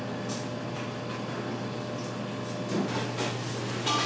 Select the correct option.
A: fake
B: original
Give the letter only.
B